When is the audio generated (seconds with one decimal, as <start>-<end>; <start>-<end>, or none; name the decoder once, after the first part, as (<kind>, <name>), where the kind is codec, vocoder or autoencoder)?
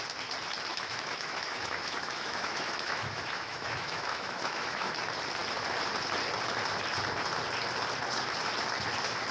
0.7-4.9 (autoencoder, DAC-VAE)